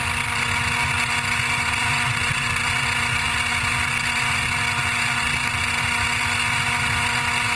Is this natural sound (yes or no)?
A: yes